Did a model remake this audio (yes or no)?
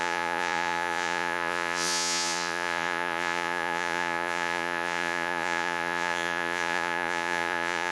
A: yes